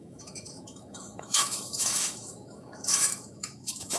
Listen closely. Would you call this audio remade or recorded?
remade